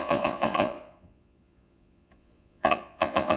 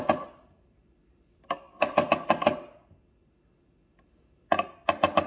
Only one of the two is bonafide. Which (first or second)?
second